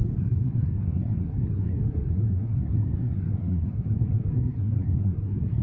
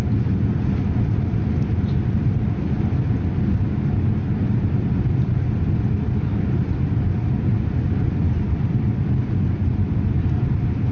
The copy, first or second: first